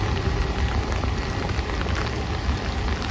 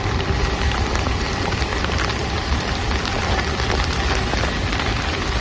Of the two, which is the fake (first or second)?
second